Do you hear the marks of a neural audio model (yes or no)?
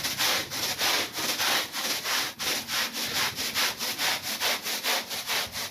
no